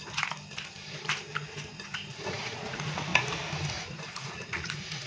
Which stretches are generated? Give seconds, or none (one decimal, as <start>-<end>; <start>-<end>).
2.1-3.1; 3.8-5.1